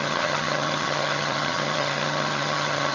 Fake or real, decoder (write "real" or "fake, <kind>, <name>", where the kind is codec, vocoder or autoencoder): fake, vocoder, HiFi-GAN